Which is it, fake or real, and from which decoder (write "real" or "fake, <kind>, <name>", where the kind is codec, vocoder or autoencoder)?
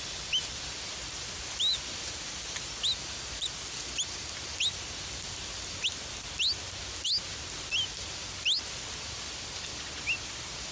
real